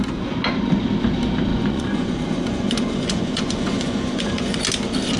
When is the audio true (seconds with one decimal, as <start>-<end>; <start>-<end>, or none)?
0.0-1.5; 4.6-5.2